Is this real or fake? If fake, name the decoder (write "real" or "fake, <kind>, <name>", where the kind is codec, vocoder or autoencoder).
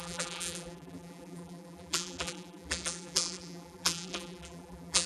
fake, vocoder, BigVGAN v2